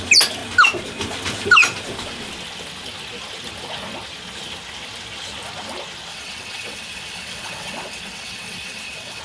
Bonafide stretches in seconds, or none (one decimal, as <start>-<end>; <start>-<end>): 0.0-6.1